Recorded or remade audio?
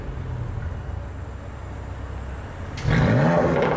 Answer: recorded